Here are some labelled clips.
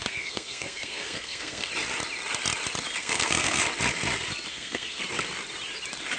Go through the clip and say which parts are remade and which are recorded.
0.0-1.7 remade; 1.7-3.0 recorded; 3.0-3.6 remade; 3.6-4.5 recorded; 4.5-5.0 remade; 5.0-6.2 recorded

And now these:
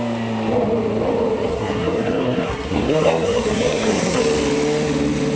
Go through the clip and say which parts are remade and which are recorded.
0.0-1.5 recorded; 1.5-4.2 remade; 4.2-5.4 recorded

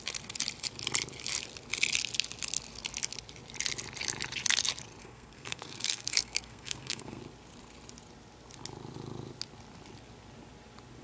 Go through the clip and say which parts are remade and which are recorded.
0.0-5.0 recorded; 5.0-7.2 remade; 7.2-11.0 recorded

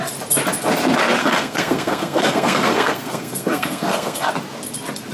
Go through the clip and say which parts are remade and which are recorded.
0.0-1.2 recorded; 1.2-4.3 remade; 4.3-5.1 recorded

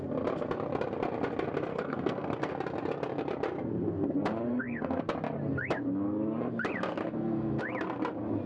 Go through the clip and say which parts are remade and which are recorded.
0.0-1.7 recorded; 1.7-2.5 remade; 2.5-4.5 recorded; 4.5-5.0 remade; 5.0-7.0 recorded; 7.0-7.6 remade; 7.6-8.5 recorded

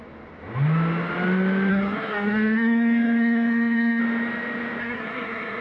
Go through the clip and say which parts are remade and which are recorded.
0.0-1.7 recorded; 1.7-4.0 remade; 4.0-4.8 recorded; 4.8-5.6 remade

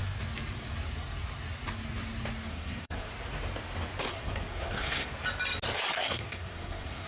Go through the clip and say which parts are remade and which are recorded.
0.0-2.5 recorded; 2.5-3.1 remade; 3.1-4.1 recorded; 4.1-5.1 remade; 5.1-6.0 recorded; 6.0-7.1 remade

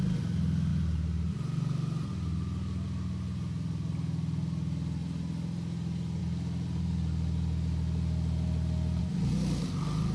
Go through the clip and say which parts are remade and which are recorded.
0.0-10.1 recorded